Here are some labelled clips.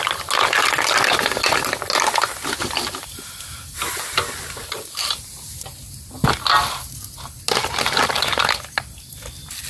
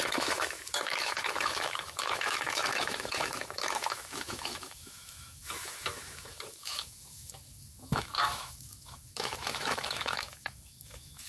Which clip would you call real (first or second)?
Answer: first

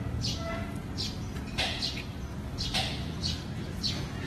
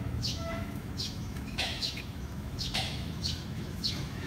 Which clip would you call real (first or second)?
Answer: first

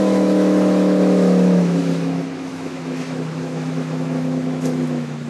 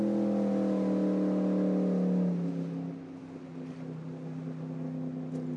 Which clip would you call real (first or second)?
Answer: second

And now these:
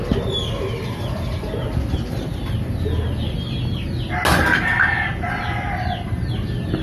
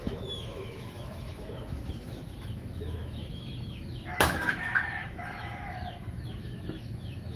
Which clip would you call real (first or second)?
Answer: first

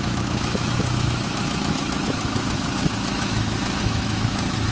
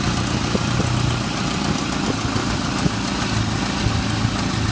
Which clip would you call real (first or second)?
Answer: second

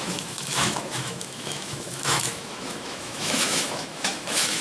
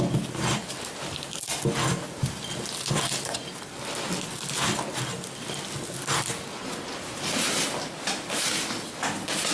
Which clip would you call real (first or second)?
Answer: second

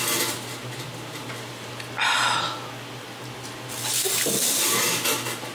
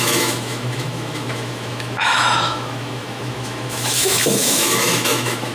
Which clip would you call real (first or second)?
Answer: first